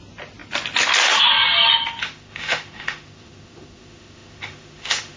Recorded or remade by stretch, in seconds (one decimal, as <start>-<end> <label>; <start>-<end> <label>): 0.0-2.0 recorded; 2.0-5.2 remade